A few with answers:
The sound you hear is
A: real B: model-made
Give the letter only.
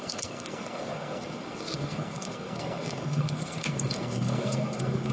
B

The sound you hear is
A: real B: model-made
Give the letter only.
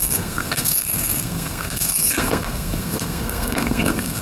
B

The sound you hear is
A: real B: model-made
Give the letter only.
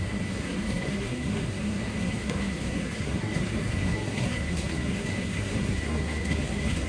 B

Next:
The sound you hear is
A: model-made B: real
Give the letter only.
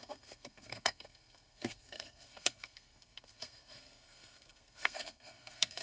A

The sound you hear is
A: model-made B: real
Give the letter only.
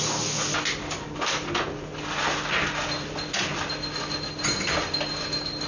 B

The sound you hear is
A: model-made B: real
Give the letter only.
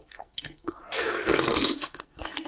A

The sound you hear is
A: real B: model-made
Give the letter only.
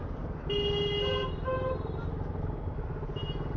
A